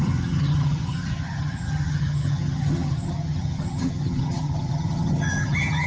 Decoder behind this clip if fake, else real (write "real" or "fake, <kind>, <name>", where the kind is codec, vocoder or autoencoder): fake, vocoder, HiFi-GAN